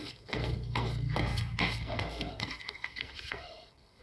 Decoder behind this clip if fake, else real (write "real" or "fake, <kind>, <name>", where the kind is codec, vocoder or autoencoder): fake, codec, SNAC